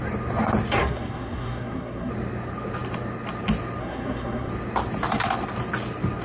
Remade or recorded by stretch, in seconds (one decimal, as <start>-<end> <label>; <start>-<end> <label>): 0.0-0.8 recorded; 0.8-2.1 remade; 2.1-3.8 recorded; 3.8-4.5 remade; 4.5-6.2 recorded